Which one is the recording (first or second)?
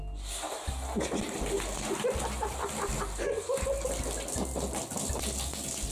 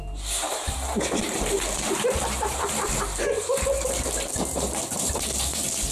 first